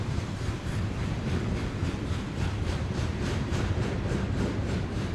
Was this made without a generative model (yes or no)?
no